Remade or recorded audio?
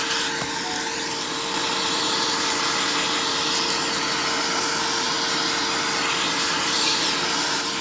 recorded